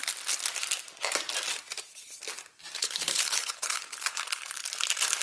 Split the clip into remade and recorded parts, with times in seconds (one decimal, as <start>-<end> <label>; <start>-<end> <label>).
0.0-2.8 recorded; 2.8-4.6 remade; 4.6-5.2 recorded